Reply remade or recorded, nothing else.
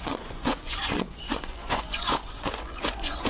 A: remade